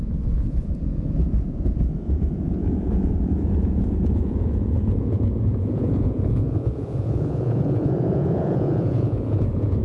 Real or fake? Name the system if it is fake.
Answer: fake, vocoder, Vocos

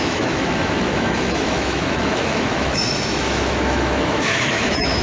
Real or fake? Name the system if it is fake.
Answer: fake, autoencoder, DAC-VAE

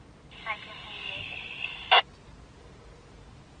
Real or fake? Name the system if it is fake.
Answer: real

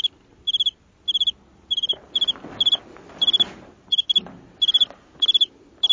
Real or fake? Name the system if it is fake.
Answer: real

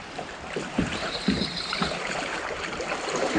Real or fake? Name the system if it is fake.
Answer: fake, vocoder, BigVGAN v2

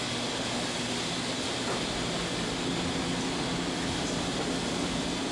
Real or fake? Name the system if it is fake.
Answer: real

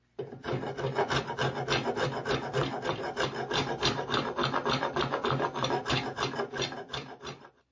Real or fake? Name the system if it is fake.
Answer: real